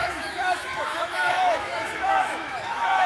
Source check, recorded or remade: remade